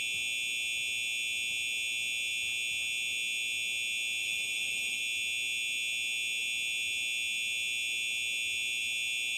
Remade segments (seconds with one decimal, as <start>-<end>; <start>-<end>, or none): 4.2-5.0

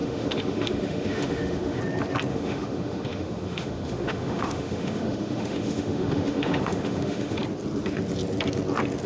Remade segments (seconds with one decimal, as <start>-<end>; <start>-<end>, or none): 0.0-1.8; 2.3-7.4